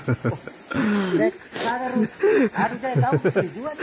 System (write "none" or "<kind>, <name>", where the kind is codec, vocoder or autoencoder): none